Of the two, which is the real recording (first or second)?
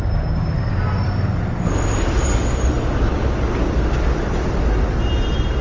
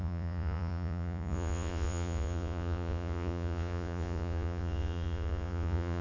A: first